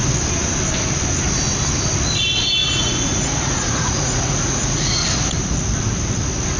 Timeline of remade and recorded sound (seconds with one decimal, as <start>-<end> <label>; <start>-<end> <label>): 0.0-2.6 recorded; 2.6-4.9 remade; 4.9-6.6 recorded